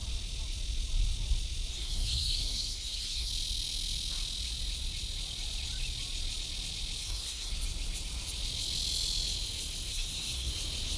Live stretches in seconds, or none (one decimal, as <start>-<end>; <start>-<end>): 0.0-1.7; 3.3-7.0; 7.5-9.9; 10.5-11.0